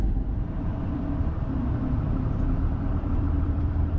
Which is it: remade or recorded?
remade